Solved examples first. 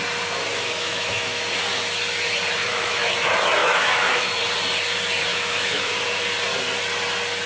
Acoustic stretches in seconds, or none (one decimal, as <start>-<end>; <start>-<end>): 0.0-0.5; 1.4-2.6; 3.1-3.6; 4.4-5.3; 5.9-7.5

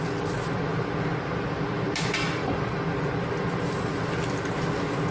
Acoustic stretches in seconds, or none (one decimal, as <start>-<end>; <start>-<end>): 0.0-5.1

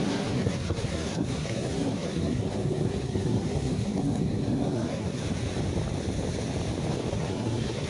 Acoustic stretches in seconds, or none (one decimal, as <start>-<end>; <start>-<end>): 5.2-7.1

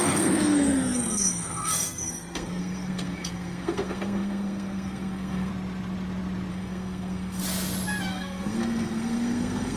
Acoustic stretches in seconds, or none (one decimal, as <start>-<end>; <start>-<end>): 5.5-6.5; 7.4-8.1

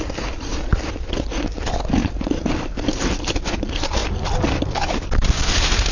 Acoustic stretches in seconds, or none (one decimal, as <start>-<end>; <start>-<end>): 0.0-5.9